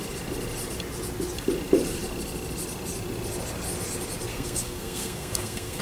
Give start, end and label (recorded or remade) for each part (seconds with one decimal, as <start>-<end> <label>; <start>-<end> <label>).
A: 0.0-4.3 recorded; 4.3-5.8 remade